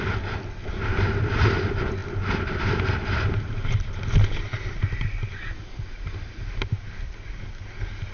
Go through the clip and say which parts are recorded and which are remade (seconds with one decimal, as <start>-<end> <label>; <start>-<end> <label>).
0.0-8.1 recorded